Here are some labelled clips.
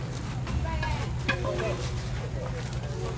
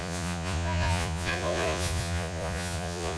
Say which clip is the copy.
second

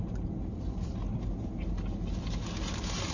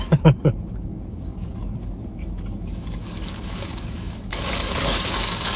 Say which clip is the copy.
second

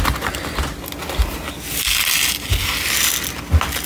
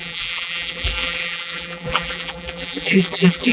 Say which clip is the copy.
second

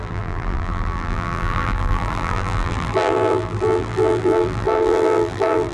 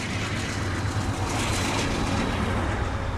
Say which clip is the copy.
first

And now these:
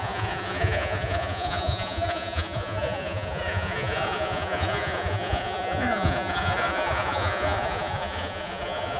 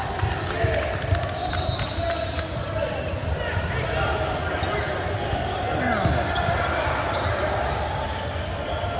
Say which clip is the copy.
first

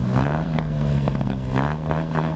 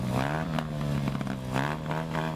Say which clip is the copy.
first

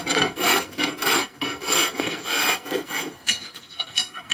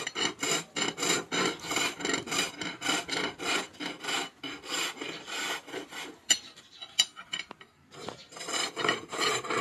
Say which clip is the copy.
first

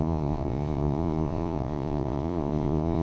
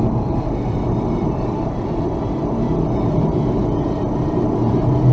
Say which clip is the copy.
first